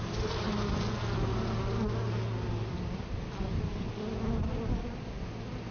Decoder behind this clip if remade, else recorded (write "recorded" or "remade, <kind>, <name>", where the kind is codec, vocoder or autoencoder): recorded